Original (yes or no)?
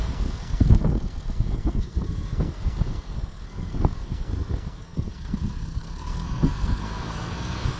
no